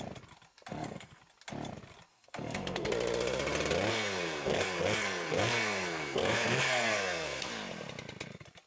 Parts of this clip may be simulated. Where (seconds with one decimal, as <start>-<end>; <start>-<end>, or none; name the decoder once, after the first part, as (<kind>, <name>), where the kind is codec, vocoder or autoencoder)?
0.7-1.2 (codec, SNAC); 2.1-2.9; 3.9-7.5

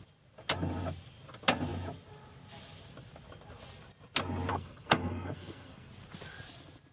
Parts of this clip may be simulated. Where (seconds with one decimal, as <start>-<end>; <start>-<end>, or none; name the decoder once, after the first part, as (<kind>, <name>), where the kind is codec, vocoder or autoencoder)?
4.5-5.9 (codec, SNAC)

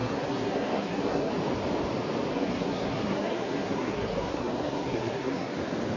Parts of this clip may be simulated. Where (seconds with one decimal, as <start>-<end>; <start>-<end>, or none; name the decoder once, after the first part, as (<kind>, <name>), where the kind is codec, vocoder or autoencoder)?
0.0-1.3 (codec, SNAC); 2.3-5.5

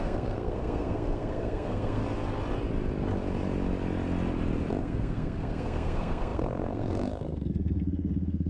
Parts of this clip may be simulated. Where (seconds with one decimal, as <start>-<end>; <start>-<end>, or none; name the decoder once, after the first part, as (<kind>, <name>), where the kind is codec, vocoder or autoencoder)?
0.0-2.0 (codec, SNAC); 4.8-8.5

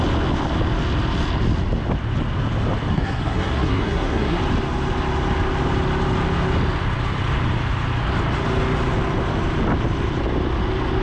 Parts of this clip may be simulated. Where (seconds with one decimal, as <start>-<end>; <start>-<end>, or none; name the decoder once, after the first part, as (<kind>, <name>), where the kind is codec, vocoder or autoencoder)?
2.9-4.4 (codec, SNAC)